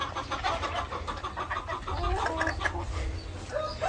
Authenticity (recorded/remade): recorded